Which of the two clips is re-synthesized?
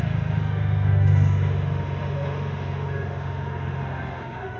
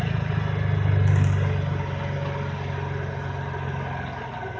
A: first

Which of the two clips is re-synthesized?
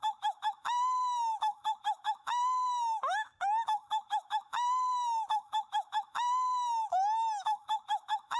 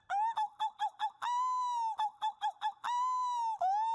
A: first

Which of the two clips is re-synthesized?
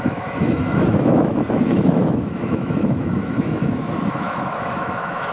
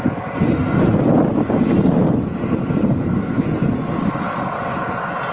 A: first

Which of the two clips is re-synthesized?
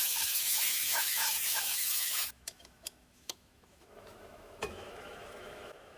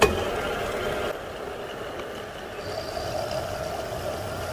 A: first